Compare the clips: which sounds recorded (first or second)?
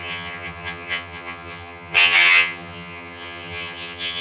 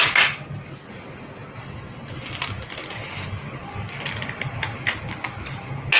second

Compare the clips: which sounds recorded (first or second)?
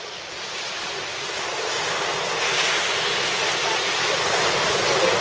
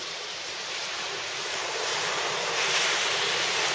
first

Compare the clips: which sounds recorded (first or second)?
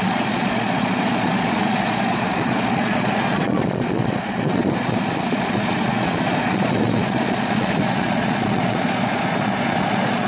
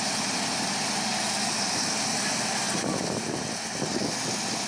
second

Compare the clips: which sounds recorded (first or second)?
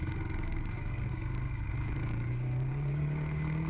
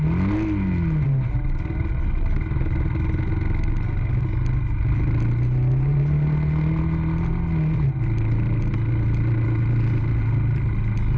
second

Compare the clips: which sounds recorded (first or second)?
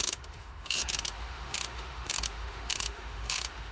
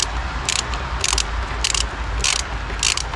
second